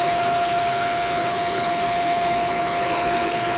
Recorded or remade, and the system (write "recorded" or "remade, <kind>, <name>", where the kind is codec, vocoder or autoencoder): remade, codec, HILCodec